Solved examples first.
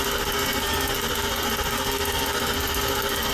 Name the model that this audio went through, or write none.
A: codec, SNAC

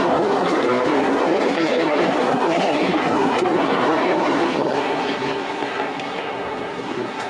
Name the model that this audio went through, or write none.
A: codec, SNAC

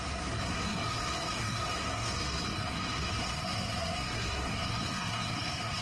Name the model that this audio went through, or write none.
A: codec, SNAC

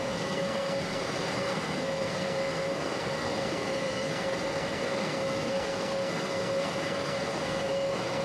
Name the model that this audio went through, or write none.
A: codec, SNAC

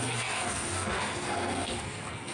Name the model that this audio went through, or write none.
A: codec, SNAC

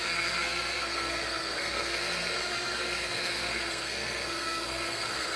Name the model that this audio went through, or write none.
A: codec, SNAC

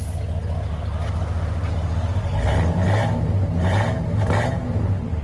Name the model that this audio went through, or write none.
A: none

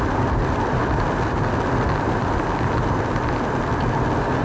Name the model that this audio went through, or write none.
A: none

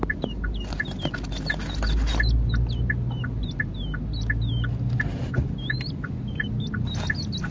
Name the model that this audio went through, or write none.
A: none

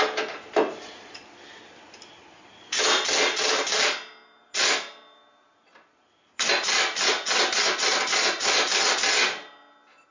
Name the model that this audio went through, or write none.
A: none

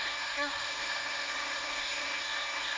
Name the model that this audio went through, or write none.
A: codec, SNAC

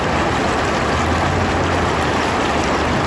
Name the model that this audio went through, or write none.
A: none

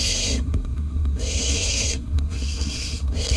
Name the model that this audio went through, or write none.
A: codec, SNAC